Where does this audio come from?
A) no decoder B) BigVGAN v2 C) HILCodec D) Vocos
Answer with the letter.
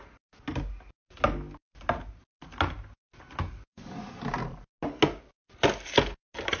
A